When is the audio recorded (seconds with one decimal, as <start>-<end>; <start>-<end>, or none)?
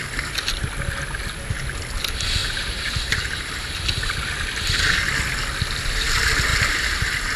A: 0.0-2.4; 3.8-7.4